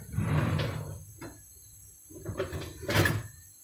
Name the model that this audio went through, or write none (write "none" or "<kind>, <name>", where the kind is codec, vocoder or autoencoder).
none